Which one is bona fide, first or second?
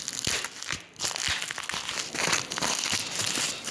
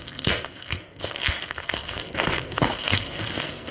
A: first